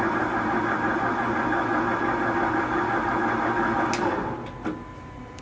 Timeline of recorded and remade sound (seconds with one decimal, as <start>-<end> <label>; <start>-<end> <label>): 0.0-1.7 remade; 1.7-4.9 recorded; 4.9-5.4 remade

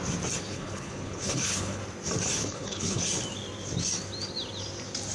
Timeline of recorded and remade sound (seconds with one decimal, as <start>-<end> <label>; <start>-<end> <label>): 0.0-0.5 recorded; 0.5-1.8 remade; 1.8-2.4 recorded; 2.4-3.0 remade; 3.0-5.1 recorded

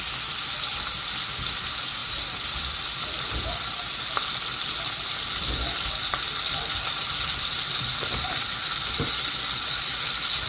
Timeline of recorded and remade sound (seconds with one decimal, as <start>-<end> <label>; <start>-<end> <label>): 0.0-10.5 recorded

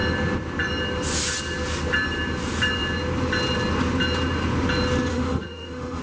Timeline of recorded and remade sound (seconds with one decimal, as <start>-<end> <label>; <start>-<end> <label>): 0.0-5.1 recorded; 5.1-6.0 remade

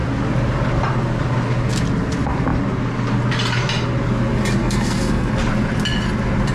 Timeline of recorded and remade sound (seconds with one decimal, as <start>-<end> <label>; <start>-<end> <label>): 0.0-4.6 recorded; 4.6-5.3 remade; 5.3-6.5 recorded

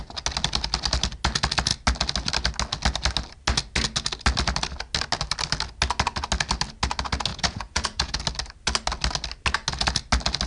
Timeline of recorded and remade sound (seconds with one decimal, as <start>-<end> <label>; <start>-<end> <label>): 0.0-7.3 recorded; 7.3-8.2 remade; 8.2-10.5 recorded